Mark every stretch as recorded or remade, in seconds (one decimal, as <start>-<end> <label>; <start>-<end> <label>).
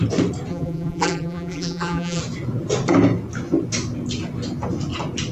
0.0-0.5 recorded; 0.5-2.2 remade; 2.2-5.3 recorded